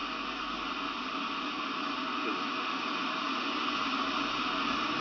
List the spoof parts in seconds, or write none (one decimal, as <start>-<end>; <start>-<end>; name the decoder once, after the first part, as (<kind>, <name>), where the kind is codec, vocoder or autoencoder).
none